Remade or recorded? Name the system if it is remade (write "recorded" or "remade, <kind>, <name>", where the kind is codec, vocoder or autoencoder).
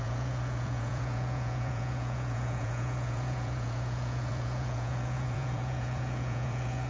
remade, vocoder, Vocos